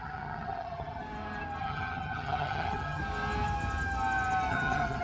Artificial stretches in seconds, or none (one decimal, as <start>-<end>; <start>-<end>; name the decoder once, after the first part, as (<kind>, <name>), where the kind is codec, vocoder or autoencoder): 0.0-1.0 (vocoder, HiFi-GAN); 1.6-3.0; 4.5-5.0